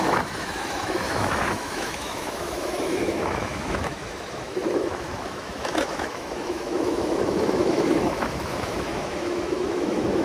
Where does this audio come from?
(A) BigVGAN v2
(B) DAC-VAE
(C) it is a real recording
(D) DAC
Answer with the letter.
B